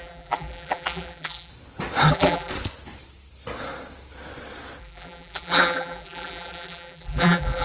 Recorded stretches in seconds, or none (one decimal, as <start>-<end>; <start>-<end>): 1.5-2.1; 2.5-4.8

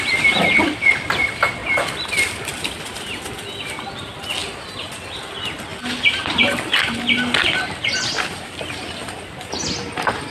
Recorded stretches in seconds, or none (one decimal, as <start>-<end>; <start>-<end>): 1.6-3.6

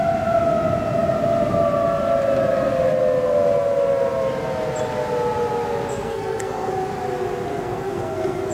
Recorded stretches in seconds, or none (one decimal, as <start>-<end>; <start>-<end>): 0.0-5.9; 6.7-7.5